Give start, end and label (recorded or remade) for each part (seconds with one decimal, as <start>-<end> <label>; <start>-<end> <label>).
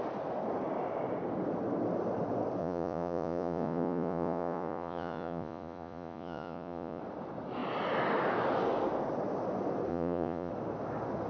0.0-2.6 recorded; 2.6-7.0 remade; 7.0-9.9 recorded; 9.9-10.5 remade; 10.5-11.3 recorded